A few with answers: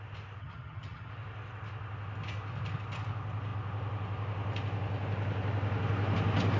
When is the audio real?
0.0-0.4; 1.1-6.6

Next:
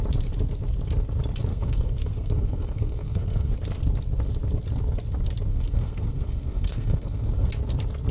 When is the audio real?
0.0-1.5; 3.5-5.5; 7.5-8.1

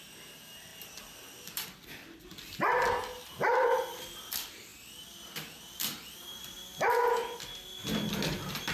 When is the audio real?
7.2-7.8

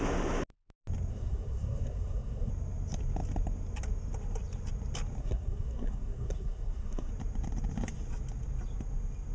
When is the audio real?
0.0-1.1; 2.5-5.2; 7.1-9.3

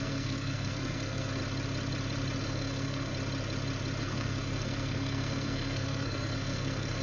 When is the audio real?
1.4-2.4; 3.1-4.0